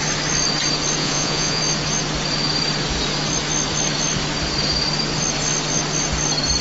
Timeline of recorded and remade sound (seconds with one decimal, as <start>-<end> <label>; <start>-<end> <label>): 0.0-1.0 recorded; 1.0-1.6 remade; 1.6-6.6 recorded